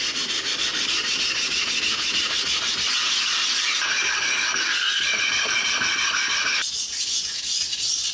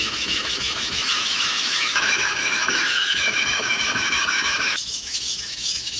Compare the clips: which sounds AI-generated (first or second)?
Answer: second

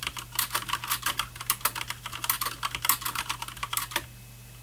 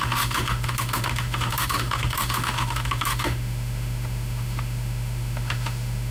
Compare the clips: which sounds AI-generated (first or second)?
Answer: second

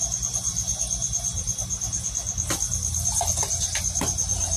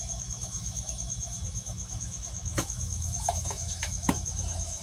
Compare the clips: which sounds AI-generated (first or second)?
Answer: second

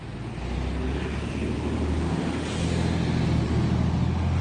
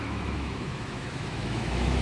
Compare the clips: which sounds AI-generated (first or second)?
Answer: second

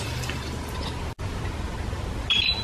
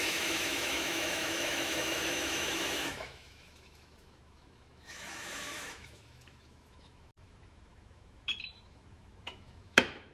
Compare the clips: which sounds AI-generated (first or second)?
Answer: second